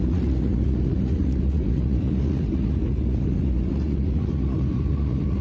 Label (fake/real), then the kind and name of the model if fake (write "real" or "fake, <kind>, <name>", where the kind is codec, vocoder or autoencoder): fake, vocoder, Vocos